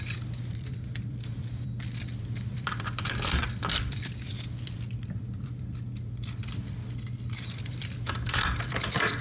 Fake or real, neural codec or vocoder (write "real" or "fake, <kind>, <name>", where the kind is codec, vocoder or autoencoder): fake, vocoder, BigVGAN v2